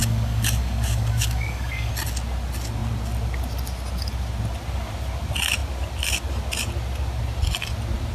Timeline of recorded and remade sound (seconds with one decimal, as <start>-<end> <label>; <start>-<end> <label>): 0.0-1.9 remade; 1.9-8.1 recorded